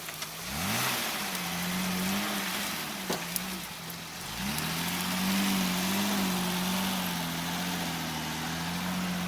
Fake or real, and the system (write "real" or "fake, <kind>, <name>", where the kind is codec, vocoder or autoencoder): real